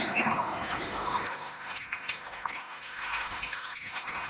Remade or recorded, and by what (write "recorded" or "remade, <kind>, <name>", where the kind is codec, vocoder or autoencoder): remade, autoencoder, DAC-VAE